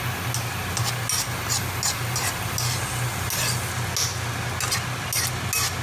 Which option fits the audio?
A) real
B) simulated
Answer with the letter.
A